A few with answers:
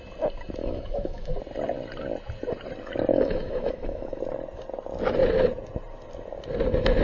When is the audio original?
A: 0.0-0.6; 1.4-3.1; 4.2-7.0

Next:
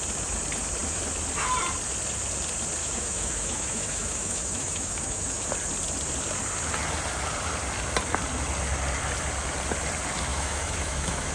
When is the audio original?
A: 0.0-2.8; 5.5-10.3